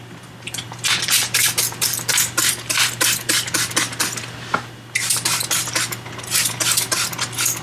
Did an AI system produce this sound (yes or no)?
no